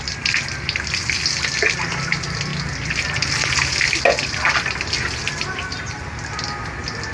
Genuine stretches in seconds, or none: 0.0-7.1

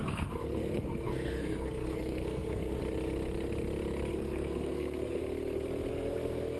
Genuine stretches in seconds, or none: 2.8-4.1; 5.2-5.9

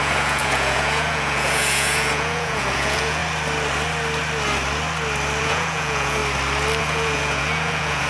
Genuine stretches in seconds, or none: 3.2-5.4; 6.2-6.8

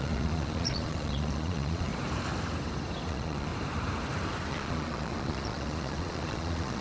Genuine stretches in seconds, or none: 1.9-3.1; 3.5-4.5

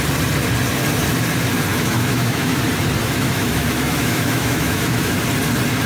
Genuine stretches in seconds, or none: 0.0-1.7; 2.6-3.0; 5.1-5.9